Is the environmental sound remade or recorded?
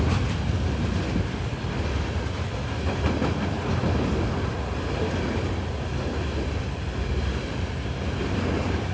recorded